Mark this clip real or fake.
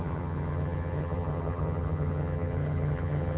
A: fake